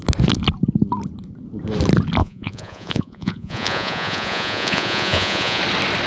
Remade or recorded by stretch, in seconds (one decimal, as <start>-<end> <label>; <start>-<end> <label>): 0.0-2.2 recorded; 2.2-5.6 remade; 5.6-6.1 recorded